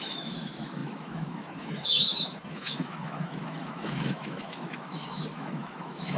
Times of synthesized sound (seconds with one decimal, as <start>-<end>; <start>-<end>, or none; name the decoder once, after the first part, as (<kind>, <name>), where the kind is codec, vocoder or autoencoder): 0.0-6.2 (autoencoder, DAC-VAE)